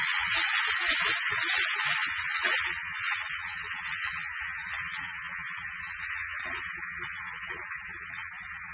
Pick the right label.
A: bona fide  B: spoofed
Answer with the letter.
B